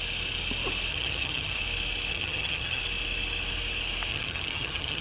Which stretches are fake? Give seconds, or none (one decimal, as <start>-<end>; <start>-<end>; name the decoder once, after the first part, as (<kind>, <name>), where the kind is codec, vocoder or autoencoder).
0.9-1.6 (vocoder, HiFi-GAN); 2.1-2.8; 4.1-5.0